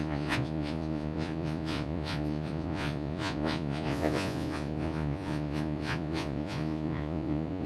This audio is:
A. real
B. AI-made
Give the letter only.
B